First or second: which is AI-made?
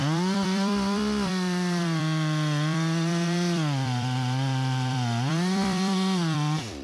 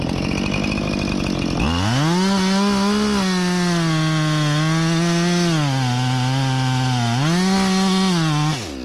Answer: first